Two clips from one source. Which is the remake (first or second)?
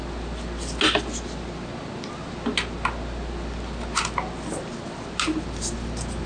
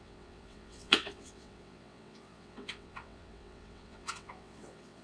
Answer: second